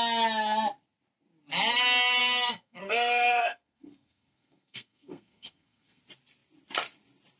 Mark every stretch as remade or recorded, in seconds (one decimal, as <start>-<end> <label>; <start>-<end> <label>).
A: 0.0-2.2 recorded; 2.2-6.0 remade; 6.0-7.4 recorded